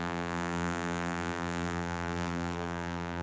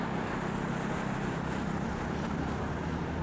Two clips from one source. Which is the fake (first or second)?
first